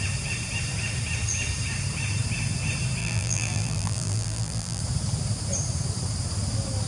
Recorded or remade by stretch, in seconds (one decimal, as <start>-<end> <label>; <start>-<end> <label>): 0.0-3.0 recorded; 3.0-4.8 remade; 4.8-6.9 recorded